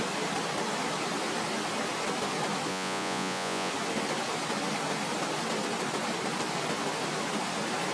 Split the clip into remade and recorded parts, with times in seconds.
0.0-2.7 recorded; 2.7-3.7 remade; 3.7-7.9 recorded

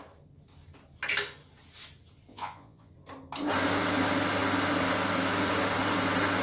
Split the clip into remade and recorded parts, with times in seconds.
0.0-2.3 recorded; 2.3-2.9 remade; 2.9-6.4 recorded

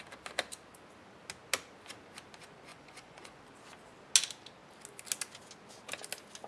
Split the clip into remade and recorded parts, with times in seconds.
0.0-2.7 recorded; 2.7-3.4 remade; 3.4-6.5 recorded

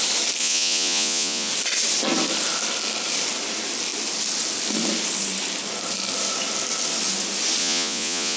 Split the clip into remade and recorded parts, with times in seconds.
0.0-0.4 recorded; 0.4-1.5 remade; 1.5-7.6 recorded; 7.6-8.4 remade

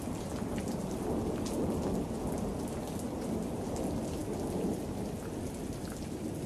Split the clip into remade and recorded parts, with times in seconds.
0.0-6.5 recorded